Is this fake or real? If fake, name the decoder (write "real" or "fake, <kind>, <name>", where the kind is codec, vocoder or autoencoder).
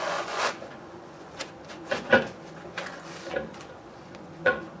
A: fake, vocoder, Vocos